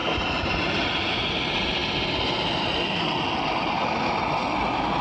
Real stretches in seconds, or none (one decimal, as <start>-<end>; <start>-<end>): 1.3-5.0